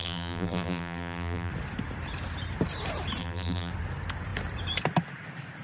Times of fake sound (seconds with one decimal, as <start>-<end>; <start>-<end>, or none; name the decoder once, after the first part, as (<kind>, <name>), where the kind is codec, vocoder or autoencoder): 0.0-1.5 (vocoder, BigVGAN v2); 3.2-3.7